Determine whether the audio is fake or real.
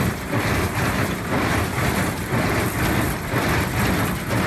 fake